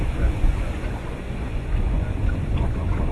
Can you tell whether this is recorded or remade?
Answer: remade